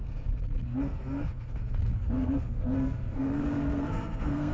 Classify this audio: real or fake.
fake